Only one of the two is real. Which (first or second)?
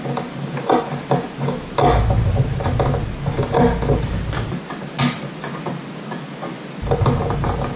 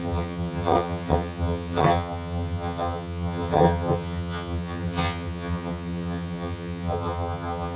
first